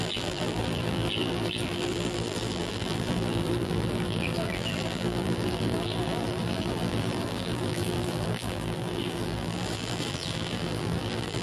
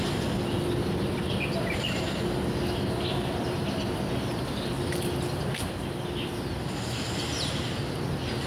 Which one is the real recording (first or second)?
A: second